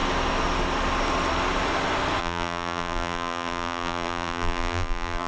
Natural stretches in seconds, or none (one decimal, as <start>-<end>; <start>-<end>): 0.0-2.2

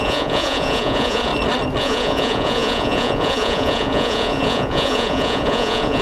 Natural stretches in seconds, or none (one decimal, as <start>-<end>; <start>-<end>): 1.3-1.8